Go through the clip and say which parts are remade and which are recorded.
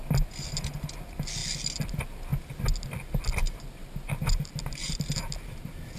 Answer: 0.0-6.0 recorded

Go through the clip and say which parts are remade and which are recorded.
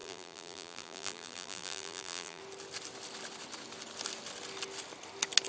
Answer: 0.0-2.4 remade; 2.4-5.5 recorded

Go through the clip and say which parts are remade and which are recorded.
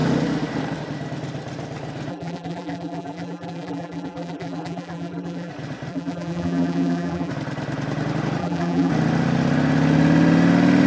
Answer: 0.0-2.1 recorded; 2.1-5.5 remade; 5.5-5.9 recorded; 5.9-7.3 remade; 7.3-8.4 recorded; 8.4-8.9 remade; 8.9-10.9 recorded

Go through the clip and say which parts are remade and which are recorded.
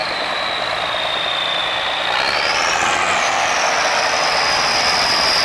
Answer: 0.0-5.4 recorded